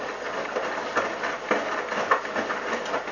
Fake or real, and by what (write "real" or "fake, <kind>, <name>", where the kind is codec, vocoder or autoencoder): real